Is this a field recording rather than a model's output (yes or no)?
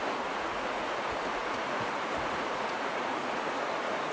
no